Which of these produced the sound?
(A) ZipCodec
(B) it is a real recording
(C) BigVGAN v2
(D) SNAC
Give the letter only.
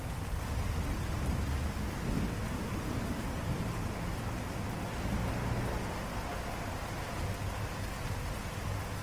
B